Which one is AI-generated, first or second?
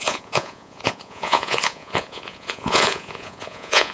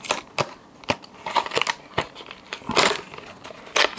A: first